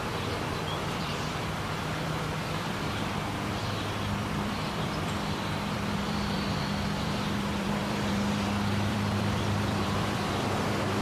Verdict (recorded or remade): remade